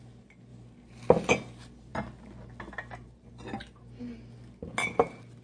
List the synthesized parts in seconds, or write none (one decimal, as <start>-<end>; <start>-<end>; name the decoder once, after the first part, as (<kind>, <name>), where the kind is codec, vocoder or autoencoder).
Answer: none